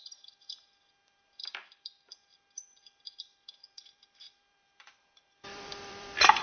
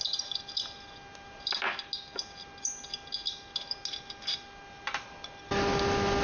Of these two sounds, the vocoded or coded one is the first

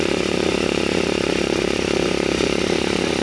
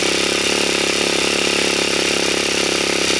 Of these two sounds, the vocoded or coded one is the first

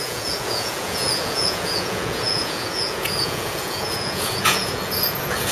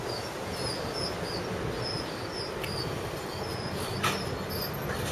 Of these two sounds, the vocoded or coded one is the first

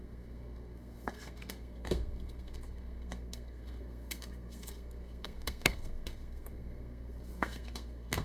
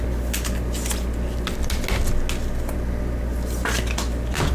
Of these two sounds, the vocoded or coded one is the first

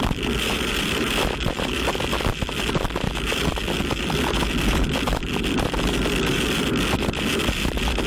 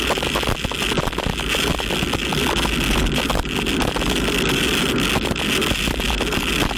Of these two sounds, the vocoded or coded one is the first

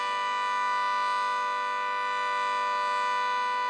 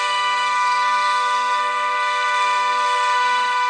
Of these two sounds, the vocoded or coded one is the second